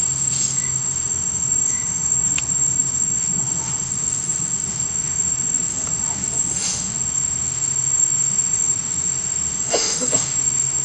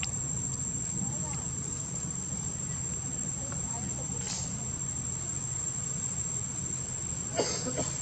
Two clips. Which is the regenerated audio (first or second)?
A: first